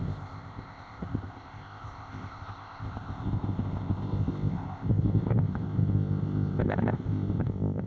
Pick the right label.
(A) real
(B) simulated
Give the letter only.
B